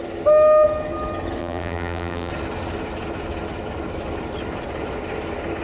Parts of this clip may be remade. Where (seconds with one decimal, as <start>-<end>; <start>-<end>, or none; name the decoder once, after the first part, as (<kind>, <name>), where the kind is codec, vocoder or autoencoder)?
1.4-2.3 (vocoder, BigVGAN v2)